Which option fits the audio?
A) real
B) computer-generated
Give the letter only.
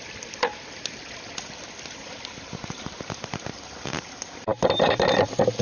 A